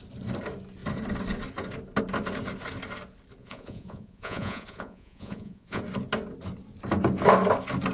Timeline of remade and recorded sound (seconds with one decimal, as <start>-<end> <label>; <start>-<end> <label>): 0.0-3.4 recorded; 3.4-5.8 remade; 5.8-7.9 recorded